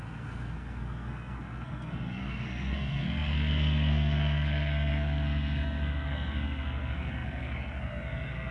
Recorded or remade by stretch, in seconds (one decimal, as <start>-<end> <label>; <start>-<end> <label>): 0.0-8.5 remade